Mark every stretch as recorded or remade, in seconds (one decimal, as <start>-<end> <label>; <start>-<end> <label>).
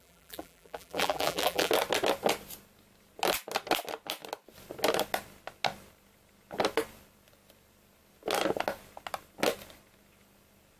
0.0-1.7 remade; 1.7-10.8 recorded